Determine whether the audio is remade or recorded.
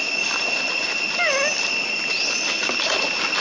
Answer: recorded